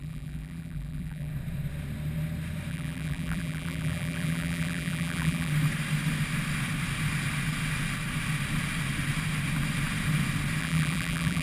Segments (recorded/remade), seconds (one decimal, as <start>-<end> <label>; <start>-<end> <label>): 0.0-1.3 remade; 1.3-2.7 recorded; 2.7-5.5 remade; 5.5-10.6 recorded; 10.6-11.4 remade